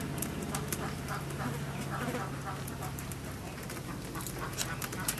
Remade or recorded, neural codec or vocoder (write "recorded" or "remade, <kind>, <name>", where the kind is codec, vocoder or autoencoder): recorded